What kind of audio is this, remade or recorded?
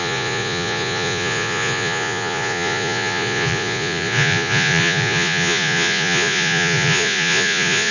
remade